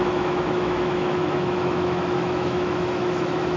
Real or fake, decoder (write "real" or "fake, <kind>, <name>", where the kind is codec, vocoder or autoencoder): fake, autoencoder, DAC-VAE